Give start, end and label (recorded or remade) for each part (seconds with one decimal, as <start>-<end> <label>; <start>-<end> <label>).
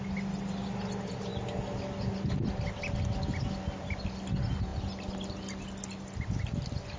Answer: 0.0-7.0 recorded